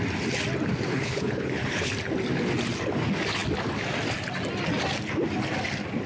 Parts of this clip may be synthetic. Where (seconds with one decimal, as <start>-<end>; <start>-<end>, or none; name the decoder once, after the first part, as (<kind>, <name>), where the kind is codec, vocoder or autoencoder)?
0.9-1.9 (codec, HILCodec)